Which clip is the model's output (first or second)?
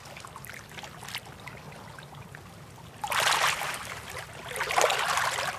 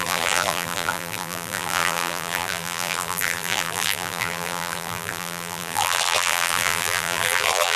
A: second